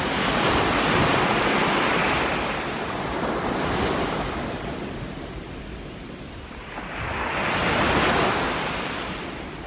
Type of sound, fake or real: real